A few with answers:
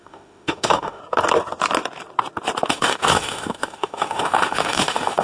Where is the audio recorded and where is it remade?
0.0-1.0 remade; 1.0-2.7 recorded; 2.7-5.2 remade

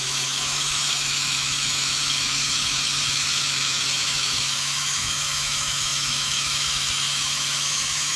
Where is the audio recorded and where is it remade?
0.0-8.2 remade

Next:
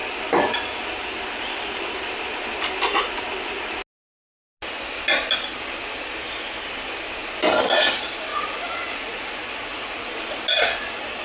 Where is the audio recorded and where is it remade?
0.0-8.3 recorded; 8.3-10.1 remade; 10.1-11.2 recorded